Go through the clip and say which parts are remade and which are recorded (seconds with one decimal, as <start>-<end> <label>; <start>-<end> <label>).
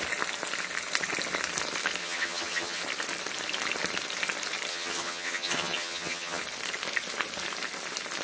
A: 0.0-2.0 recorded; 2.0-2.8 remade; 2.8-4.7 recorded; 4.7-6.4 remade; 6.4-8.2 recorded